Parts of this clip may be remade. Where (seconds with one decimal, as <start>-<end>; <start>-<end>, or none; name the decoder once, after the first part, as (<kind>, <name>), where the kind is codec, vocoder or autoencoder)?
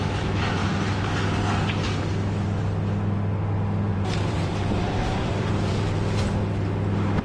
0.6-1.1 (vocoder, BigVGAN v2); 3.9-5.5